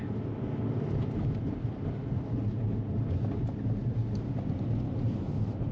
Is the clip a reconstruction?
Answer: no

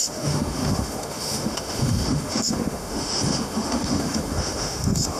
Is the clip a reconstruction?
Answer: yes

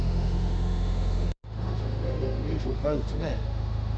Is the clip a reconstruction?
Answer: yes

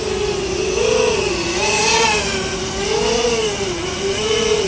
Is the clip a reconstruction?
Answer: no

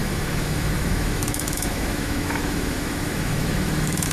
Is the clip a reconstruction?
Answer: yes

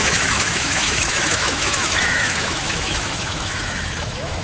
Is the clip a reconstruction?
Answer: yes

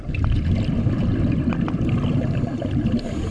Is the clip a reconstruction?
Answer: no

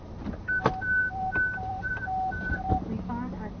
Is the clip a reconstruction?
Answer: no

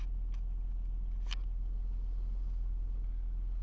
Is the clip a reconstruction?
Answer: no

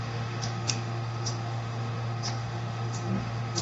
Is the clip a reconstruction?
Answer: yes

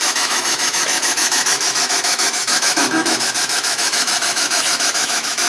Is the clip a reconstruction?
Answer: yes